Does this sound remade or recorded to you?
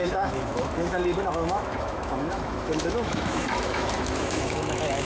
remade